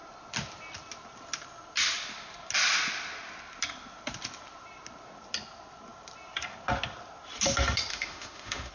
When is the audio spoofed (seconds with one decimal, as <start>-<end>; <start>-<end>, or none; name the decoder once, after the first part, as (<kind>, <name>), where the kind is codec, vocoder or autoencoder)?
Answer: 7.9-8.7 (autoencoder, DAC-VAE)